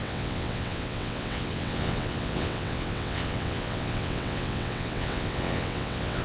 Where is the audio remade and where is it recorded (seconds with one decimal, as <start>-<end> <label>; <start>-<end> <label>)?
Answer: 0.0-6.2 remade